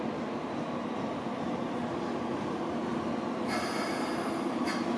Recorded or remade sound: recorded